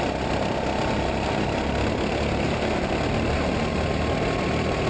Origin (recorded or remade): recorded